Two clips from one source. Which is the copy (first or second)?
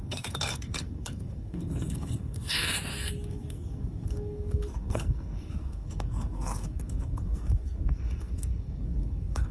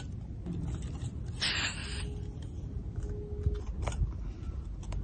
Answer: first